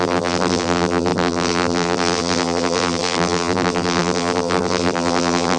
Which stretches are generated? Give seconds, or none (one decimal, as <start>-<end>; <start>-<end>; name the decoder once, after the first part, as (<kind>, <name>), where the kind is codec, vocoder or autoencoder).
0.0-5.6 (vocoder, BigVGAN v2)